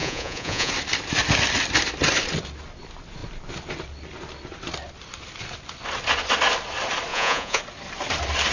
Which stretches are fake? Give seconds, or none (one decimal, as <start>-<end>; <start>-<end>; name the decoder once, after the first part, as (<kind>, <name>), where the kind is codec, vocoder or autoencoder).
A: 0.0-0.7 (vocoder, Vocos); 7.1-7.6